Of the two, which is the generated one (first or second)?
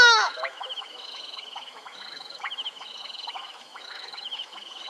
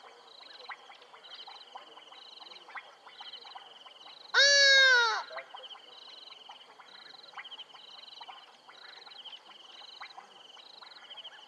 first